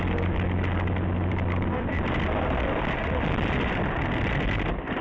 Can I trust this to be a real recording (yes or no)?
yes